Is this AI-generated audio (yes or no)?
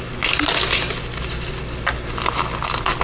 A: no